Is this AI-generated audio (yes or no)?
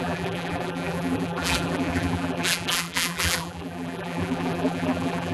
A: yes